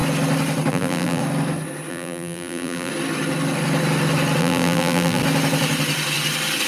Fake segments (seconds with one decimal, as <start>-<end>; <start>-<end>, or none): 0.7-1.2; 1.9-2.9; 4.4-5.2